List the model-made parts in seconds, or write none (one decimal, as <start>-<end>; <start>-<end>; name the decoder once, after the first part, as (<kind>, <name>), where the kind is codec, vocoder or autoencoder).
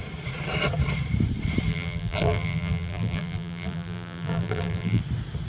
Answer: 1.7-5.0 (vocoder, BigVGAN v2)